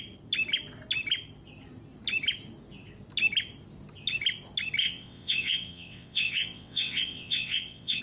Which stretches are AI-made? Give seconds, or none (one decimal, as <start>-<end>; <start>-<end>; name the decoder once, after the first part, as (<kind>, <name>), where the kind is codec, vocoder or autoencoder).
4.8-8.0 (vocoder, WaveNeXt)